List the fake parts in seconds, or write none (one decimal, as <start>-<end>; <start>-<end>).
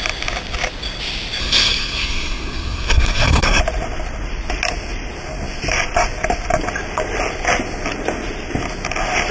1.4-3.6